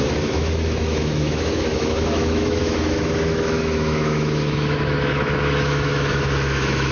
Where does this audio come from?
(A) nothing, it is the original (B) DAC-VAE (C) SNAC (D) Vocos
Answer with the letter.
B